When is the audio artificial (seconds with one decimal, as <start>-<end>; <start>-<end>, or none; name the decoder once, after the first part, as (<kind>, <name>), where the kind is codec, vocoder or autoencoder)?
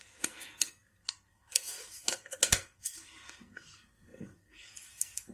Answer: 0.0-5.3 (codec, SNAC)